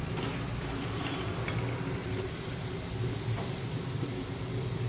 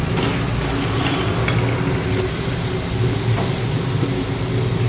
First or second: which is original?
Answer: second